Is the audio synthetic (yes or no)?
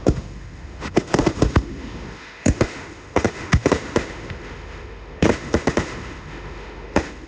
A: yes